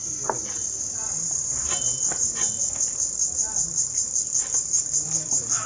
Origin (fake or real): real